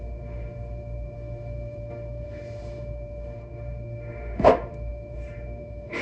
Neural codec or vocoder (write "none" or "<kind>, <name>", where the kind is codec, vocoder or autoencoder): autoencoder, DAC-VAE